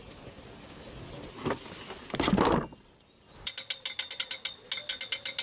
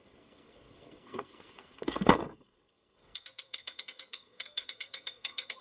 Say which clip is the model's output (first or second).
second